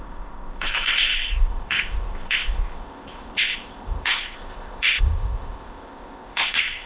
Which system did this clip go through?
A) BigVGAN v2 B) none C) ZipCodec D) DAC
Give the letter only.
C